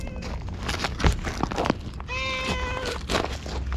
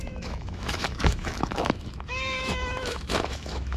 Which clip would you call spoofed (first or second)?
second